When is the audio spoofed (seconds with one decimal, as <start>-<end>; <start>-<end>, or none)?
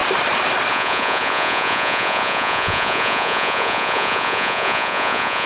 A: 0.7-5.5